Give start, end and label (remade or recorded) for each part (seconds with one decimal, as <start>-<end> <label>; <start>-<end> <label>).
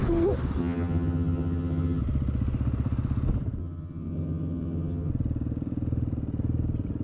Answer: 0.0-0.6 recorded; 0.6-2.0 remade; 2.0-3.6 recorded; 3.6-5.1 remade; 5.1-7.0 recorded